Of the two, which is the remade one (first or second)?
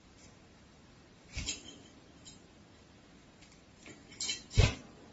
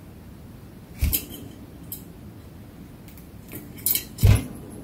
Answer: first